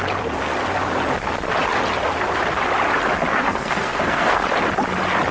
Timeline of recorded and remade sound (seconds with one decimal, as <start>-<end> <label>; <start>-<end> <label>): 0.0-3.3 recorded; 3.3-4.4 remade; 4.4-5.3 recorded